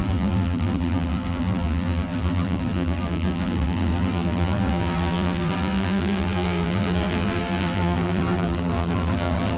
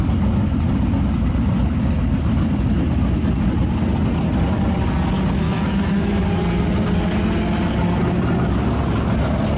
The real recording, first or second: second